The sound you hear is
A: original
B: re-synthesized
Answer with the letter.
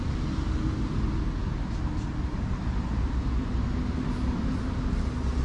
A